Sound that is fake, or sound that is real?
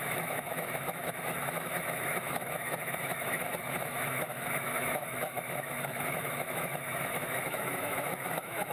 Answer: fake